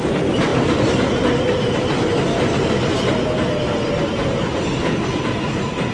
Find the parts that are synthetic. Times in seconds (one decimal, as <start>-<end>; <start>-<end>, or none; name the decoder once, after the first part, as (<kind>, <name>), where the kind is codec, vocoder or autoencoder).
none